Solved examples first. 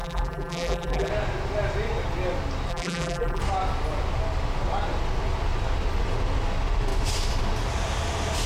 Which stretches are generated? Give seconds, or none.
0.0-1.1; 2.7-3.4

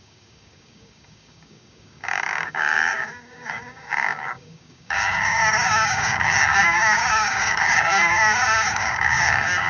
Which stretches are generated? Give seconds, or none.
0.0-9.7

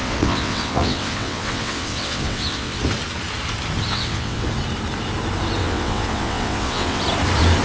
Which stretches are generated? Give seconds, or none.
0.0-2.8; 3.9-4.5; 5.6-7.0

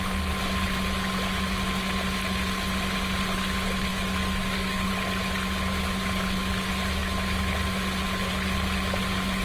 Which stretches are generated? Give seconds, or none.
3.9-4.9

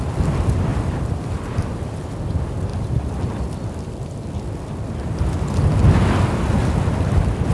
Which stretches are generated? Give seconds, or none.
0.7-1.3

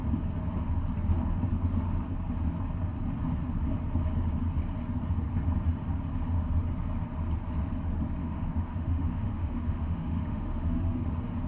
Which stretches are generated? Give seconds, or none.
8.2-11.1